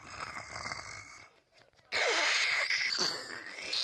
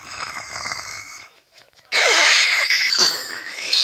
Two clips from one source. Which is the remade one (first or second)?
second